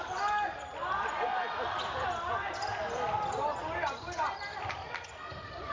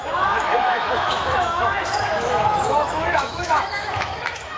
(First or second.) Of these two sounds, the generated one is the second